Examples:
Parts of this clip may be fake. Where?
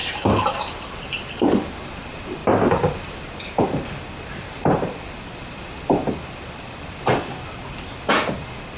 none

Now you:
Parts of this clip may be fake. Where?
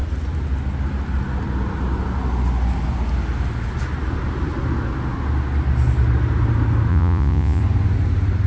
6.9-7.6 (vocoder, Vocos)